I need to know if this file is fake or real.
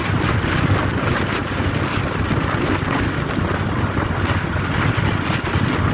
real